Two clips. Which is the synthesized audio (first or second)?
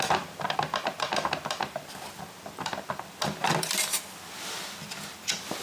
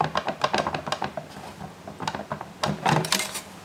first